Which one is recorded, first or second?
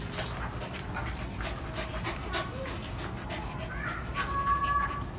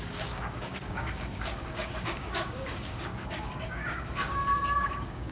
first